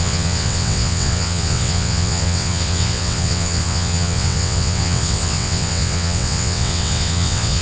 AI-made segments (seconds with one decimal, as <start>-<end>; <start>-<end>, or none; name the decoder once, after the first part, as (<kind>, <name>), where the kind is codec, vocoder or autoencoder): 0.0-7.6 (vocoder, WaveNeXt)